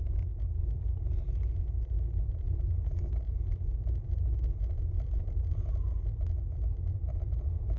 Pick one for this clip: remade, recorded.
recorded